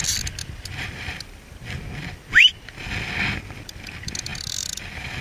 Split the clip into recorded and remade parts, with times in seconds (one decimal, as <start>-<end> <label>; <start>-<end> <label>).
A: 0.0-5.2 recorded